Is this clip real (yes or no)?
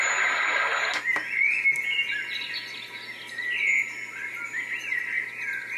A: yes